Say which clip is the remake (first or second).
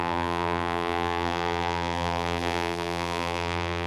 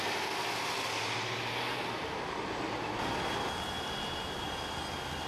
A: first